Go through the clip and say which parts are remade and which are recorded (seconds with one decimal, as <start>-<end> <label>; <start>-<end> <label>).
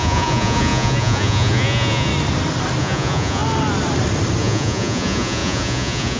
0.0-2.1 remade; 2.1-2.8 recorded; 2.8-3.4 remade; 3.4-4.4 recorded; 4.4-6.2 remade